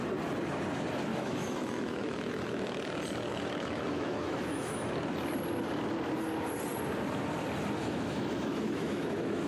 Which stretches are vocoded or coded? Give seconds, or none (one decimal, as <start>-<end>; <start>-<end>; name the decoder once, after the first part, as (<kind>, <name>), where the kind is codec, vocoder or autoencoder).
1.1-2.8 (autoencoder, DAC-VAE); 3.3-4.9; 7.8-9.5